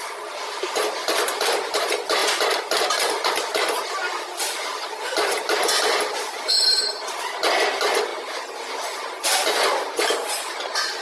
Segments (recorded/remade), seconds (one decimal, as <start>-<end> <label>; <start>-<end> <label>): 0.0-11.0 recorded